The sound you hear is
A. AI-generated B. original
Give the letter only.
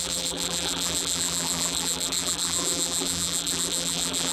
A